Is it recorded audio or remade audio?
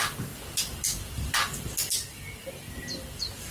recorded